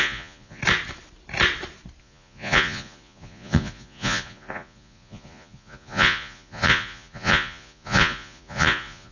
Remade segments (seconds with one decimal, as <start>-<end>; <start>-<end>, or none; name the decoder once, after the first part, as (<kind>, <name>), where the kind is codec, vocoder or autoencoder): 0.0-0.6 (vocoder, Vocos); 2.0-9.1